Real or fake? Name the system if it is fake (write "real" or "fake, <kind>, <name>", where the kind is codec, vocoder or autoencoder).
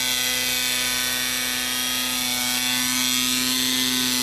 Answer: real